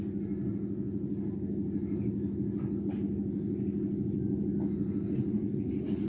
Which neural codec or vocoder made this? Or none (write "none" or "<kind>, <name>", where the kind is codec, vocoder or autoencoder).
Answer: none